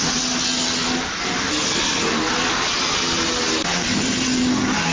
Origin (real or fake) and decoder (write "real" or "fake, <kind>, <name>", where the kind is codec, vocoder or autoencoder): real